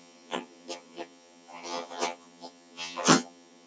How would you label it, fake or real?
fake